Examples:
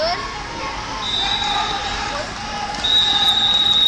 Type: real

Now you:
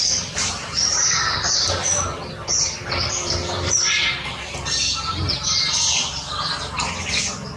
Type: fake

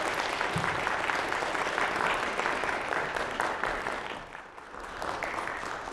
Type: fake